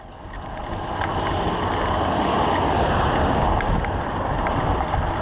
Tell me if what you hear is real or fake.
real